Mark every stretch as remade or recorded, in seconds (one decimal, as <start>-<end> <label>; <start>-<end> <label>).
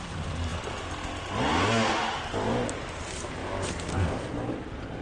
0.0-5.0 recorded